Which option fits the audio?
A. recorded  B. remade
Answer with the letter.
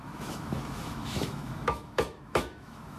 B